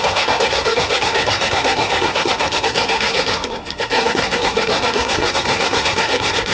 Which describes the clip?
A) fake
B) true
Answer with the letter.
A